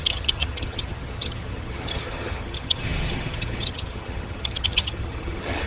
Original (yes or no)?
no